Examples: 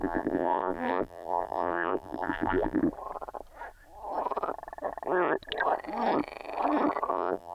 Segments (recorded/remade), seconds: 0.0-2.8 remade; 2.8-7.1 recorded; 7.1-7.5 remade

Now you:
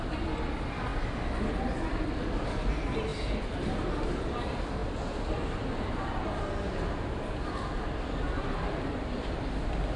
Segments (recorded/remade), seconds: 0.0-10.0 recorded

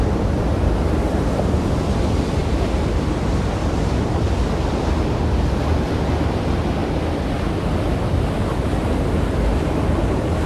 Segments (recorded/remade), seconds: 0.0-6.8 remade; 6.8-10.0 recorded; 10.0-10.5 remade

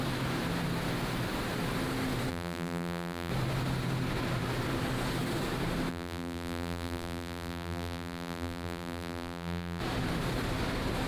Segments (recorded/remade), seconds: 0.0-2.3 recorded; 2.3-3.3 remade; 3.3-5.9 recorded; 5.9-9.8 remade; 9.8-11.1 recorded

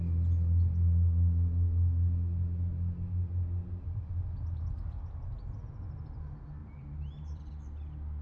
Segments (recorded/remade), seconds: 0.0-6.6 recorded; 6.6-7.5 remade; 7.5-8.2 recorded

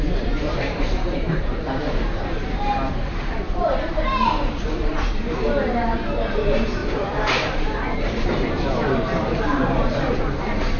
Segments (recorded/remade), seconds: 0.0-10.8 remade

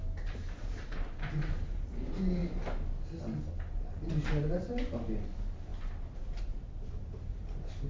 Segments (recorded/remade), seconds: 0.0-2.4 remade; 2.4-3.7 recorded; 3.7-5.7 remade; 5.7-6.4 recorded; 6.4-7.9 remade

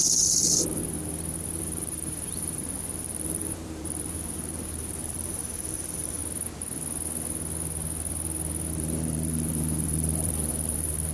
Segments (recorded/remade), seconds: 0.0-0.8 remade; 0.8-1.6 recorded; 1.6-6.2 remade; 6.2-8.7 recorded; 8.7-11.1 remade